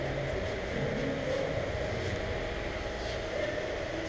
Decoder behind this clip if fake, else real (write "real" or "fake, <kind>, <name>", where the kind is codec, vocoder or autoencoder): real